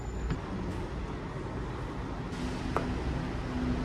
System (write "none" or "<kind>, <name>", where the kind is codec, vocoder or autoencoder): none